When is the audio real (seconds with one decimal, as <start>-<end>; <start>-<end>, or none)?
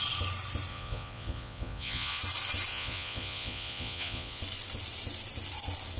0.0-0.7; 2.2-2.7; 4.4-6.0